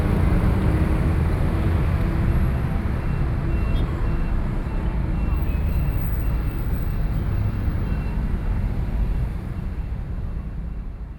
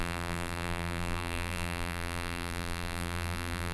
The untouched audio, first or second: first